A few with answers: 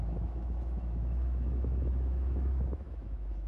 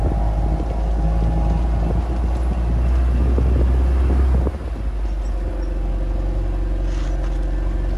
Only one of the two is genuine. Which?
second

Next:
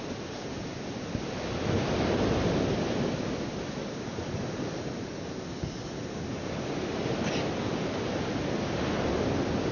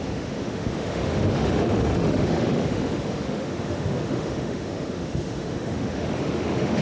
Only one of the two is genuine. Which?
first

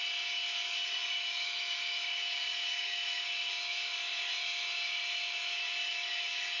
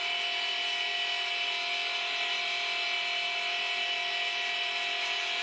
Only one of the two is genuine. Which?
second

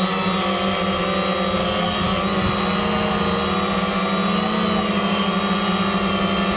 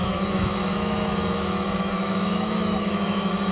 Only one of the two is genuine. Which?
first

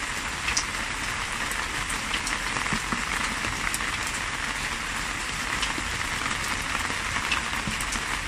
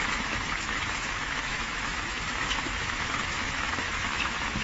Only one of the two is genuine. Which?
first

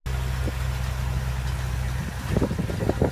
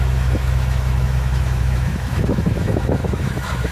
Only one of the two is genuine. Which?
first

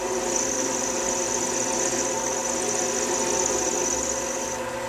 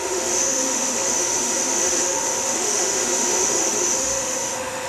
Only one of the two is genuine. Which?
first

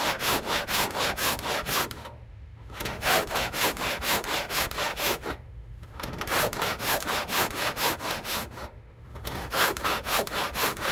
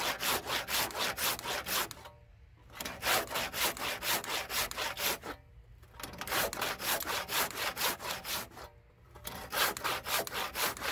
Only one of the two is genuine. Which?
second